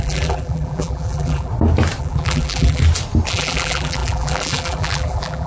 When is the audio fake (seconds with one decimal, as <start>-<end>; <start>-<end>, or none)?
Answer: 0.0-1.5; 2.0-2.8; 3.3-5.5